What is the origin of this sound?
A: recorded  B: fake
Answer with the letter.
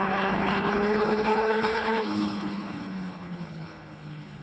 B